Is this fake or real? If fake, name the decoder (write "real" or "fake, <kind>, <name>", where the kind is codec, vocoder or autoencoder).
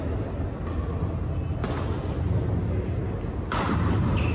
real